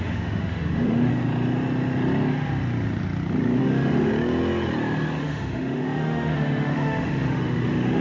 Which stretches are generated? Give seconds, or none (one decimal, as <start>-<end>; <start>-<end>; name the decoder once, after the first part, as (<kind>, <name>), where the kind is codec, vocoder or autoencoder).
0.0-1.1 (autoencoder, DAC-VAE); 3.6-4.1; 5.2-8.0